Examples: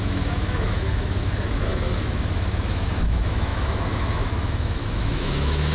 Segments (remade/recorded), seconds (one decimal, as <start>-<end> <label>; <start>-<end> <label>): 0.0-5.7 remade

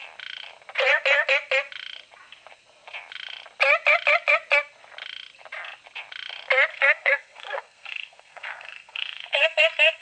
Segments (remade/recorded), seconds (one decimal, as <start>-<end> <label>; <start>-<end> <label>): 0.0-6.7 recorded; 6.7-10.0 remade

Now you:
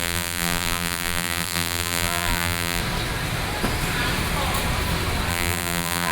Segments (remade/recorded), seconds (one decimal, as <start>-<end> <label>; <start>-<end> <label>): 0.0-2.8 remade; 2.8-5.3 recorded; 5.3-6.1 remade

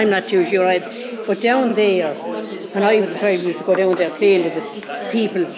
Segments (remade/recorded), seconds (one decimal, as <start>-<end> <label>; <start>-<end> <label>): 0.0-1.7 remade; 1.7-3.0 recorded; 3.0-5.6 remade

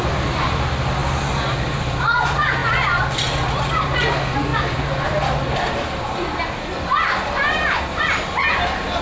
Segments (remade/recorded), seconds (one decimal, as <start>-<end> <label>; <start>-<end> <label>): 0.0-9.0 recorded

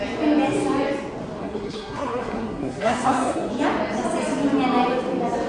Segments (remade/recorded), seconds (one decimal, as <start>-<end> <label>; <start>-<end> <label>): 0.0-1.4 recorded; 1.4-3.5 remade; 3.5-5.5 recorded

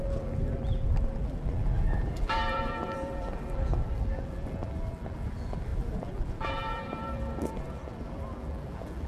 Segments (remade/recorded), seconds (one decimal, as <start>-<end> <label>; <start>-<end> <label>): 0.0-9.1 remade